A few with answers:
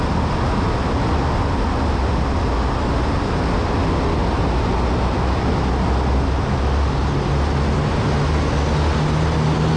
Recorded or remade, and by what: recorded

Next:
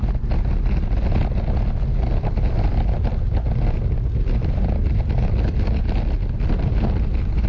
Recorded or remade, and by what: recorded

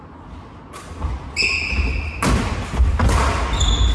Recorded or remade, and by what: recorded